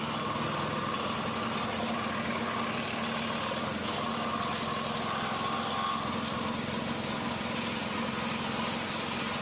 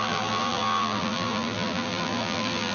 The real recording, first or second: first